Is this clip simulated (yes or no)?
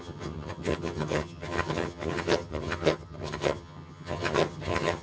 yes